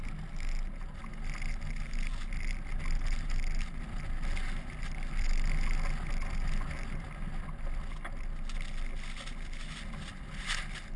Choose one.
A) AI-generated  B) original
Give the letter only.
B